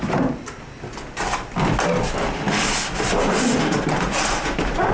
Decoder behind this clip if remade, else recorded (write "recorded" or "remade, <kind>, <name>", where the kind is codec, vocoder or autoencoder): recorded